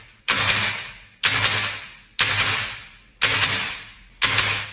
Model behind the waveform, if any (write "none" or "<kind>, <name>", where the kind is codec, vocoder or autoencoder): none